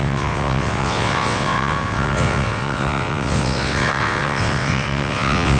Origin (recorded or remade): remade